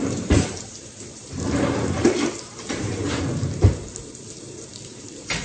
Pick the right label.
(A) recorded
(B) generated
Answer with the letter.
B